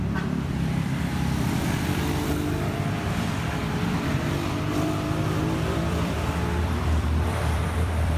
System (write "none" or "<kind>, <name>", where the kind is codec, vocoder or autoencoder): vocoder, BigVGAN v2